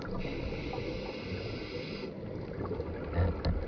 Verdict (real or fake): real